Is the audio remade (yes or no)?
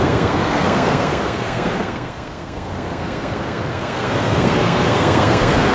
yes